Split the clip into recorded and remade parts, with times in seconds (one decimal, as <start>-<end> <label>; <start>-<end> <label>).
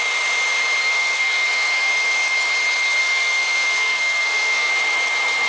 0.0-0.8 recorded; 0.8-1.9 remade; 1.9-3.0 recorded; 3.0-4.7 remade; 4.7-5.5 recorded